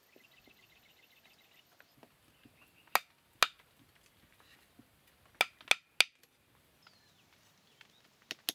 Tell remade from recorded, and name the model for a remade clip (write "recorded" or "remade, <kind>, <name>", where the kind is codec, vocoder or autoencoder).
recorded